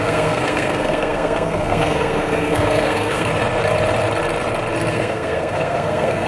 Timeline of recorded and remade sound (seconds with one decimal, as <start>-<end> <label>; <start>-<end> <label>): 0.0-3.3 remade; 3.3-4.9 recorded; 4.9-6.3 remade